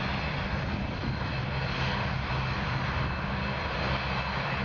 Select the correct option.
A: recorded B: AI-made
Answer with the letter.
A